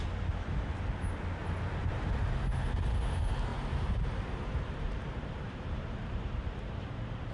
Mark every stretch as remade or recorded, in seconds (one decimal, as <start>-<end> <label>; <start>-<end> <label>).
0.0-1.4 recorded; 1.4-2.2 remade; 2.2-3.5 recorded; 3.5-7.3 remade